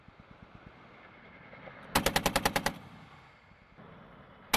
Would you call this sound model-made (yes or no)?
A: no